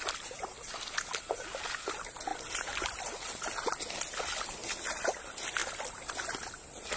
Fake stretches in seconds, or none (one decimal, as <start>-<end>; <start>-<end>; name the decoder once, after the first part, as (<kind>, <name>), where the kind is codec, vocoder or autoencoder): none